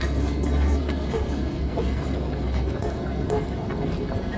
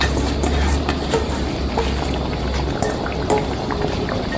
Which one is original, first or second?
second